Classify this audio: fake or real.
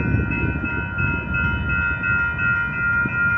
real